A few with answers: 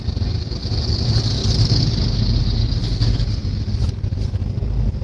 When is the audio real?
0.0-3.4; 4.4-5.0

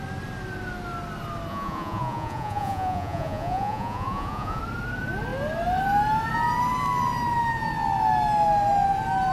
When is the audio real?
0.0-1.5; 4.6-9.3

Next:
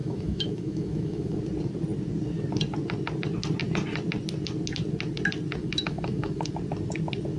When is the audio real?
1.4-5.6; 6.5-7.4

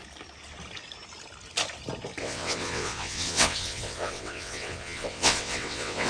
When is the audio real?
0.0-2.2

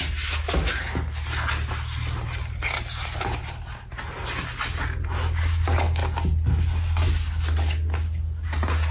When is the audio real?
0.0-8.9

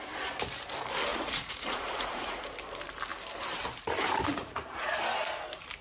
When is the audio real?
0.0-1.1; 2.4-4.3; 4.9-5.8

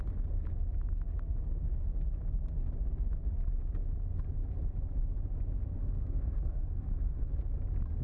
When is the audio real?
0.0-5.8; 7.3-8.0